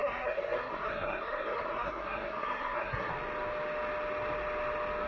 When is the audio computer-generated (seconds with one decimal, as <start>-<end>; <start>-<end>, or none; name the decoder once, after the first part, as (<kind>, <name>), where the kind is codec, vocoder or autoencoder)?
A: 0.0-3.1 (codec, SNAC)